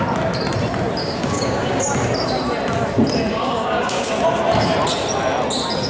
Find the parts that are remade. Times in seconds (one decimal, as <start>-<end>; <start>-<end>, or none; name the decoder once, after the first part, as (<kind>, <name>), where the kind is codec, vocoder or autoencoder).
1.0-1.8 (codec, DAC); 3.3-4.1